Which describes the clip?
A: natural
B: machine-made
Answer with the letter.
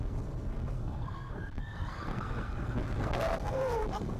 B